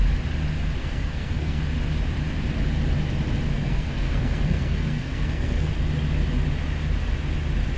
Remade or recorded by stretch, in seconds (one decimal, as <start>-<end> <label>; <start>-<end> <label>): 0.0-0.8 recorded; 0.8-1.6 remade; 1.6-3.5 recorded; 3.5-5.7 remade; 5.7-7.8 recorded

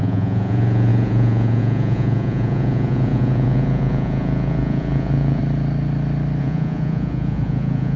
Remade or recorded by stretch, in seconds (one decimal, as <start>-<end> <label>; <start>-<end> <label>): 0.0-5.4 remade; 5.4-6.4 recorded; 6.4-8.0 remade

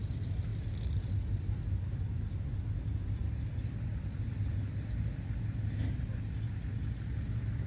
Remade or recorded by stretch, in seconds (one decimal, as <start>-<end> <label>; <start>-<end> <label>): 0.0-7.7 recorded

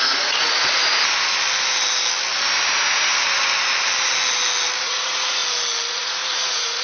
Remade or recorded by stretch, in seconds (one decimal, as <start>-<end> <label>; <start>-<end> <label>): 0.0-0.8 remade; 0.8-4.8 recorded; 4.8-5.4 remade; 5.4-5.9 recorded; 5.9-6.8 remade

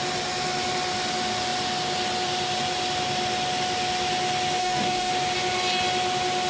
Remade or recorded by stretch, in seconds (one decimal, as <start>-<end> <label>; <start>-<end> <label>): 0.0-4.6 recorded; 4.6-5.1 remade; 5.1-6.5 recorded

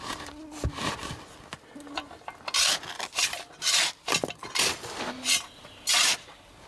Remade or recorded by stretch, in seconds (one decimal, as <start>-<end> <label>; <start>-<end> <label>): 0.0-6.7 recorded

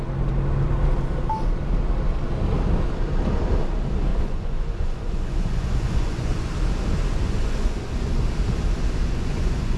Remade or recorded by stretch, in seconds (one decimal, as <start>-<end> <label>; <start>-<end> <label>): 0.0-4.1 recorded; 4.1-6.5 remade; 6.5-7.1 recorded; 7.1-8.3 remade; 8.3-9.0 recorded; 9.0-9.8 remade